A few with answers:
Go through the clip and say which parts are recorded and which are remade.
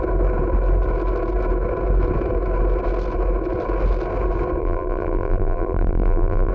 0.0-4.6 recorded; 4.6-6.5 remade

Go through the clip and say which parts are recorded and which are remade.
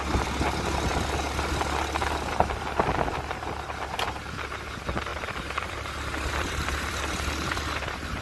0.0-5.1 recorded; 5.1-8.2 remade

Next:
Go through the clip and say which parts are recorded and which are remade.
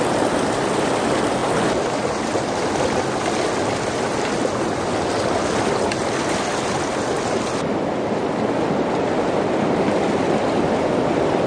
0.0-11.5 recorded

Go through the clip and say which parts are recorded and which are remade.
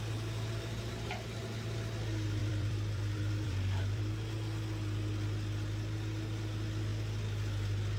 0.0-2.4 recorded; 2.4-4.1 remade; 4.1-8.0 recorded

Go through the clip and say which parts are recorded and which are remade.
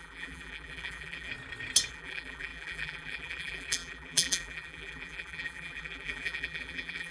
0.0-1.3 remade; 1.3-1.9 recorded; 1.9-7.1 remade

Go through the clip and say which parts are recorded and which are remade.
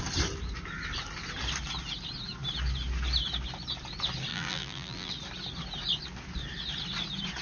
0.0-4.3 recorded; 4.3-5.1 remade; 5.1-7.4 recorded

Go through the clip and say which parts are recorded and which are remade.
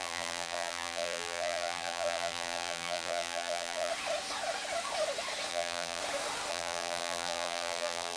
0.0-3.9 remade; 3.9-5.5 recorded; 5.5-6.0 remade; 6.0-6.5 recorded; 6.5-8.2 remade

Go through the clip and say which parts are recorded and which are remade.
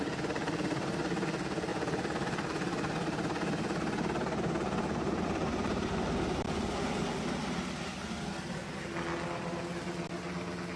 0.0-1.7 recorded; 1.7-6.7 remade; 6.7-10.8 recorded